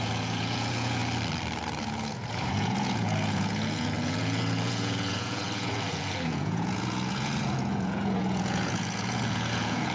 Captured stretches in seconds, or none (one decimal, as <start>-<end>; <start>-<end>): 1.0-1.8